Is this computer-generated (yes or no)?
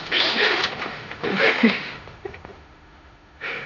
yes